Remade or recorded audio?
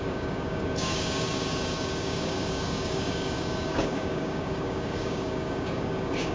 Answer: remade